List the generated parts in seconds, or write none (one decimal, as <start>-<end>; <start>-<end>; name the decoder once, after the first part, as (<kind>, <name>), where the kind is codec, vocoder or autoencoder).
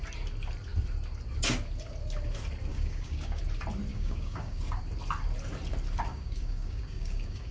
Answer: 2.7-3.4 (codec, DAC); 3.9-4.8; 6.1-7.5